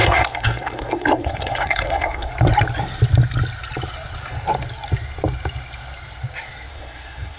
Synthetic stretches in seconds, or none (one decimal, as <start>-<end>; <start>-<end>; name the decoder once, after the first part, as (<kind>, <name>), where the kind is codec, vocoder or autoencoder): 0.0-2.3 (codec, SNAC); 6.7-7.4